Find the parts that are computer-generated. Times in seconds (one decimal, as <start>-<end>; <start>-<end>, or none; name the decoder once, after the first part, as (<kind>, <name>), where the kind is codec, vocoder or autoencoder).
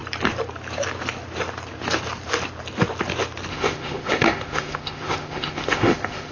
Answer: 3.5-6.3 (autoencoder, DAC-VAE)